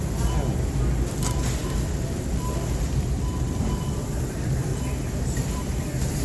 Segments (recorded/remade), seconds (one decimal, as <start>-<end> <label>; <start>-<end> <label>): 0.0-4.7 remade; 4.7-5.5 recorded; 5.5-6.2 remade